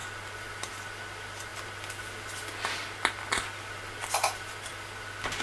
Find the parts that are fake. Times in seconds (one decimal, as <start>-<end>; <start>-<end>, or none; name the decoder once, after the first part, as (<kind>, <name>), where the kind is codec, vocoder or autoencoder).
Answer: none